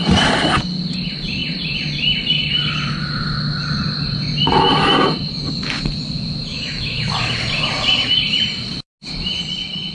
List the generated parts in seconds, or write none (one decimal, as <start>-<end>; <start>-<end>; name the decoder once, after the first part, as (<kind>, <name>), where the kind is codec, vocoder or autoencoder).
6.5-7.1 (autoencoder, DAC-VAE)